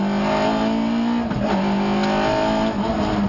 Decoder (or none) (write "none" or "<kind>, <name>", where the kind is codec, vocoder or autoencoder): none